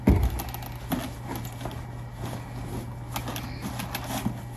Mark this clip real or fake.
real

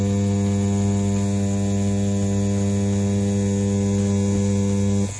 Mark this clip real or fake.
real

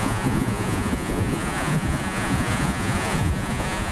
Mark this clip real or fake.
fake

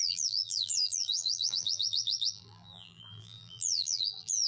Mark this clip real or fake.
fake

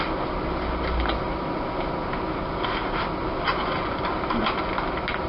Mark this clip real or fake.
real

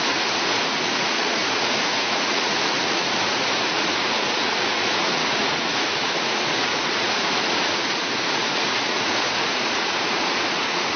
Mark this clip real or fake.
fake